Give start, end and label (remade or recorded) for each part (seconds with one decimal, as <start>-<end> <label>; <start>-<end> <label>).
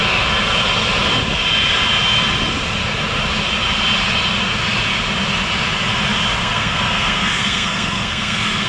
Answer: 0.0-6.4 recorded; 6.4-8.7 remade